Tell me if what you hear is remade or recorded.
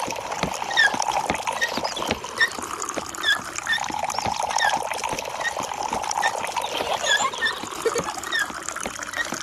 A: remade